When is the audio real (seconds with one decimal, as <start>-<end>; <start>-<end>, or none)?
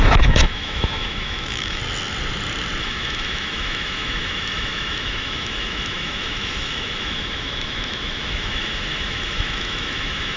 1.8-2.8